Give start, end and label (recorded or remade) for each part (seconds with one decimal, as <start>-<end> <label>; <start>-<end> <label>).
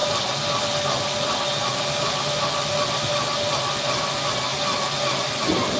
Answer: 0.0-5.8 recorded